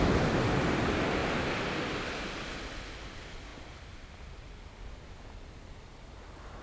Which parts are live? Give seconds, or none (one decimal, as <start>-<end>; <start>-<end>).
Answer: 0.0-6.6